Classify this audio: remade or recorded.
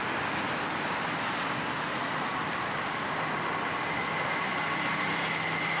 recorded